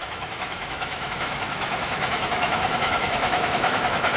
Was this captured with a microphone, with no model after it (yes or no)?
no